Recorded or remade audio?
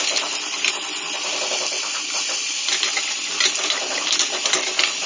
recorded